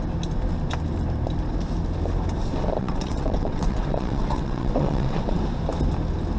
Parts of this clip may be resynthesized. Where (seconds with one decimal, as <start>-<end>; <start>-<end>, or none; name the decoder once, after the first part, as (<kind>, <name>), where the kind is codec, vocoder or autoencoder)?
2.8-5.4 (vocoder, WaveNeXt)